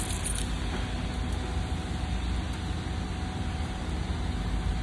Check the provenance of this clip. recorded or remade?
recorded